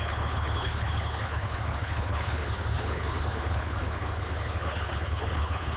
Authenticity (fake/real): fake